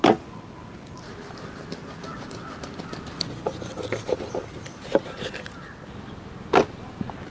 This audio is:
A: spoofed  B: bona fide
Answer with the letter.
B